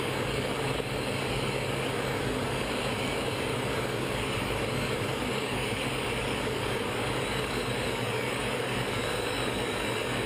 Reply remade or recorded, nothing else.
remade